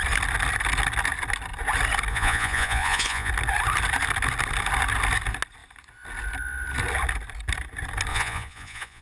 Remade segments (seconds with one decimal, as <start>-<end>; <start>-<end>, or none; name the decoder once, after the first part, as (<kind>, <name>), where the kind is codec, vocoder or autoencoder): 2.1-3.3 (vocoder, Vocos); 8.1-9.0